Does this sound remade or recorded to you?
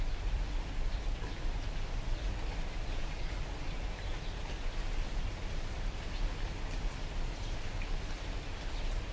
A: remade